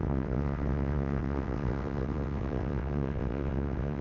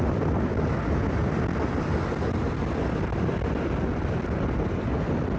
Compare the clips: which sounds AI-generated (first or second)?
first